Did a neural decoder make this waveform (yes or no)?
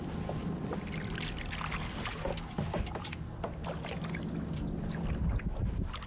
no